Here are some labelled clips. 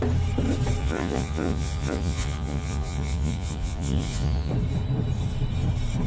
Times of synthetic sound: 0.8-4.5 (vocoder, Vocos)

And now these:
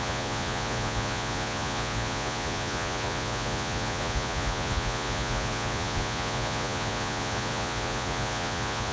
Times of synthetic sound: 0.0-8.9 (vocoder, Vocos)

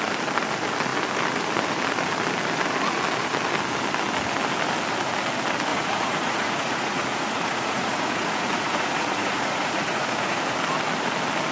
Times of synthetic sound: 5.7-10.4 (vocoder, Vocos)

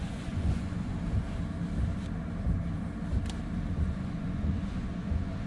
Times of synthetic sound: 0.0-0.9 (vocoder, Vocos); 3.7-5.5

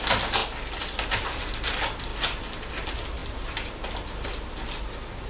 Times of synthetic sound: none

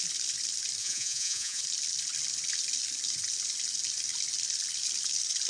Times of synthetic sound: 0.8-1.6 (vocoder, Vocos)